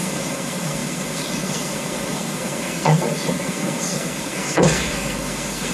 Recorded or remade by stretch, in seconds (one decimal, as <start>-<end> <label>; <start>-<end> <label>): 0.0-5.7 remade